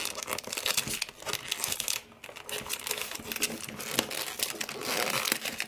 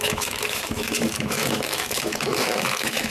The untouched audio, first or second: first